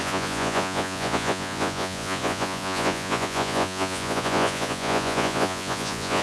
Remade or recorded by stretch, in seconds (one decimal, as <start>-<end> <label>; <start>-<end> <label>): 0.0-6.2 remade